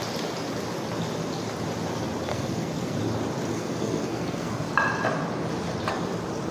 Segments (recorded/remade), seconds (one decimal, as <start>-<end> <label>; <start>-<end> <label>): 0.0-2.3 recorded; 2.3-3.0 remade; 3.0-3.5 recorded; 3.5-4.7 remade; 4.7-6.5 recorded